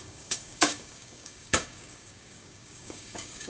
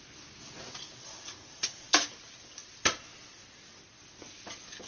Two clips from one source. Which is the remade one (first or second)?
first